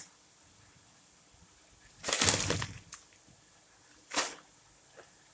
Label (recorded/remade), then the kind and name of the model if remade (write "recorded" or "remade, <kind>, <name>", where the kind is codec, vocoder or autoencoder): recorded